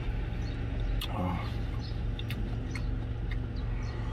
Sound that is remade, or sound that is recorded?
recorded